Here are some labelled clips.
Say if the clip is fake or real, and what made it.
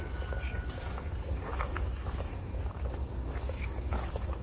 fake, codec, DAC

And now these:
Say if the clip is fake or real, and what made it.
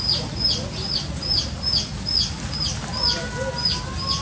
real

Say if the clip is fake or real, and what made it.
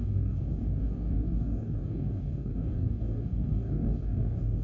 fake, codec, DAC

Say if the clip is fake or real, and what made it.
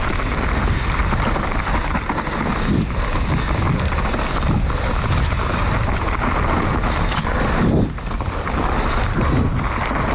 real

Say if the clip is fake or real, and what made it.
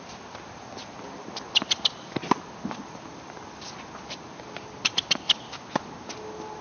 real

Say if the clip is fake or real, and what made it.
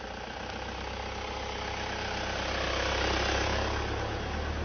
real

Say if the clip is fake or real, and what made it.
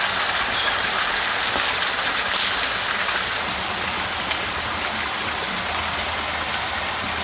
real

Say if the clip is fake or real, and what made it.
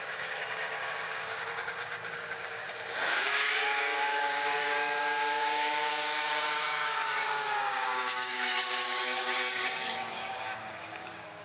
fake, codec, DAC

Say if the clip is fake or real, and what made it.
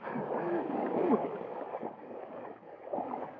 fake, codec, DAC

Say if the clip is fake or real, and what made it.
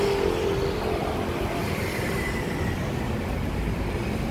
real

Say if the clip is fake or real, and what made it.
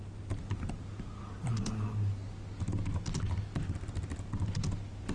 real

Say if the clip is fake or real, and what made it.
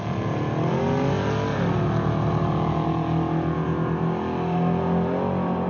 real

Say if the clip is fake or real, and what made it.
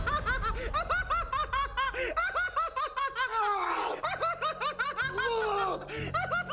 real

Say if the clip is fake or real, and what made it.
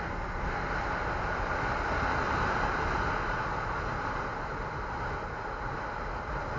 real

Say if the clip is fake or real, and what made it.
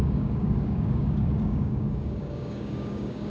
fake, codec, DAC